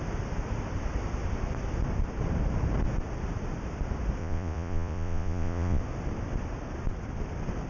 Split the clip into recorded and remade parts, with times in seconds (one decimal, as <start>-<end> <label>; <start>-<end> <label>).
0.0-4.2 recorded; 4.2-5.8 remade; 5.8-7.7 recorded

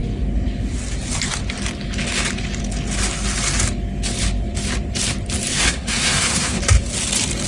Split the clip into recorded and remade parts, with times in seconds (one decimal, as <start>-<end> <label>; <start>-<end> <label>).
0.0-5.5 recorded; 5.5-6.6 remade; 6.6-7.5 recorded

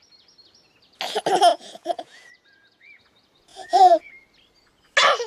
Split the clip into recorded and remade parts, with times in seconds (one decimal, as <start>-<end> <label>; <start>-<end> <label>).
0.0-1.5 recorded; 1.5-3.0 remade; 3.0-3.5 recorded; 3.5-4.1 remade; 4.1-5.3 recorded

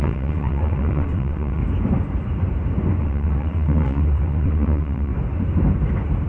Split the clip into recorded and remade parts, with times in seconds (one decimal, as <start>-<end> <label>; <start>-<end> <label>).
0.0-1.6 remade; 1.6-3.0 recorded; 3.0-5.1 remade; 5.1-6.3 recorded

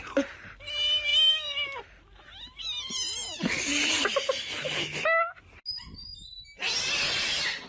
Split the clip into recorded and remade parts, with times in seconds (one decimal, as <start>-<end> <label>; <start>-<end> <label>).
0.0-7.7 recorded

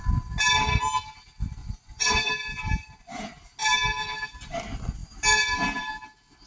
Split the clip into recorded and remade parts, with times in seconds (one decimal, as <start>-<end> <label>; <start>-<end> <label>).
0.0-1.6 recorded; 1.6-2.3 remade; 2.3-6.5 recorded

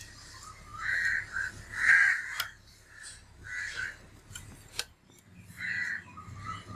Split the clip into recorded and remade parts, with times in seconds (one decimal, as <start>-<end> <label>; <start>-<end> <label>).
0.0-6.8 recorded